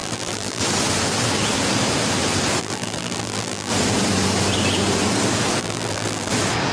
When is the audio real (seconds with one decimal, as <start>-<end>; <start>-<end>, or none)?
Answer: 0.6-2.6; 3.7-5.6; 6.3-6.7